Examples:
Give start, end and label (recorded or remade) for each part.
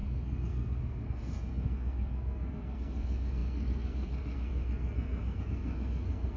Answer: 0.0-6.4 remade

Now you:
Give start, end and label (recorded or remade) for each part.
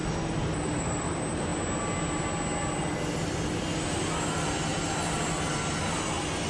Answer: 0.0-6.5 recorded